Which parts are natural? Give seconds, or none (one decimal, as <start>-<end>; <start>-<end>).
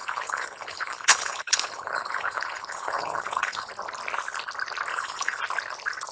3.7-4.9; 5.4-6.1